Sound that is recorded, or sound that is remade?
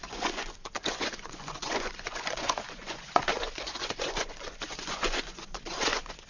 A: remade